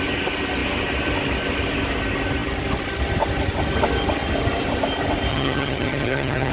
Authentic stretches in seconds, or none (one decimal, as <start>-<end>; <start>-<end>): 0.0-5.3